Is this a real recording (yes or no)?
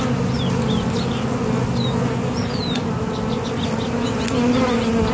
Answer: yes